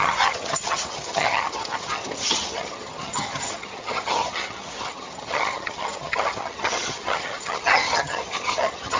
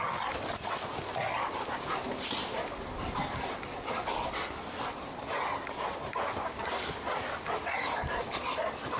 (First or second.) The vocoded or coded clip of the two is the first